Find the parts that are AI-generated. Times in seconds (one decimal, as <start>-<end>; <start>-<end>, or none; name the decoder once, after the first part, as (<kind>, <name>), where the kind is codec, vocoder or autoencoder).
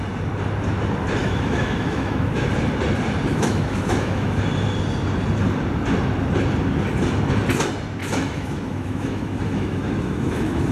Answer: 1.2-2.5 (autoencoder, DAC-VAE); 3.3-4.4; 8.0-10.7